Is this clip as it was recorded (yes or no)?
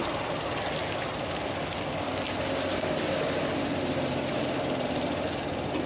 yes